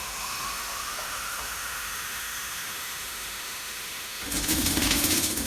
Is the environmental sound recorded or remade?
remade